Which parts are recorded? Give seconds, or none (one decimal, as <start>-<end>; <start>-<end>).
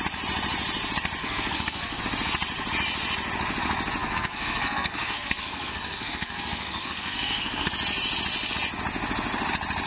0.0-1.2; 2.0-4.0; 7.7-9.9